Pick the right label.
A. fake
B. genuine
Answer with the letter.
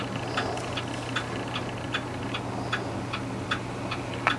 B